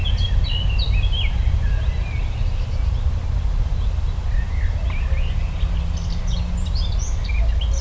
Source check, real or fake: real